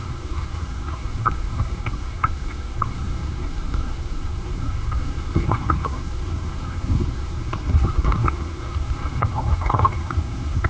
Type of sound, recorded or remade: remade